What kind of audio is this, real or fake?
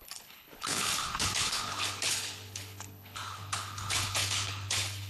fake